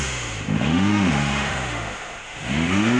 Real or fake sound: fake